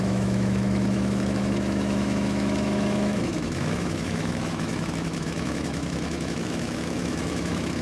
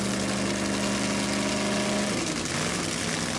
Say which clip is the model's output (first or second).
first